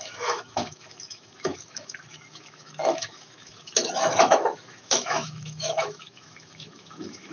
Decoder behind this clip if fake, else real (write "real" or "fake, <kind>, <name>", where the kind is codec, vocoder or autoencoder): fake, autoencoder, DAC-VAE